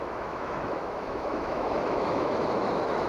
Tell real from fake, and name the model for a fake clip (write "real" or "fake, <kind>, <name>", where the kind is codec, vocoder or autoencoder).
fake, autoencoder, DAC-VAE